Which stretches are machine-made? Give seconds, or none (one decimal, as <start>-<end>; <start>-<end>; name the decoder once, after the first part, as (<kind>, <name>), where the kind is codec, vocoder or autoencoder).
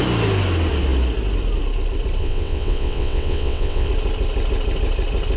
2.2-3.9 (vocoder, WaveNeXt)